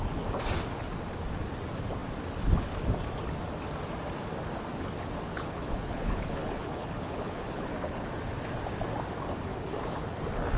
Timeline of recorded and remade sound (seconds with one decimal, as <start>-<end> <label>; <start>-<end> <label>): 0.0-5.3 recorded; 5.3-8.1 remade; 8.1-9.5 recorded; 9.5-10.2 remade; 10.2-10.6 recorded